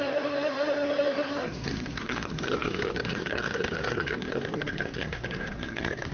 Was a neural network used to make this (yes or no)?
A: yes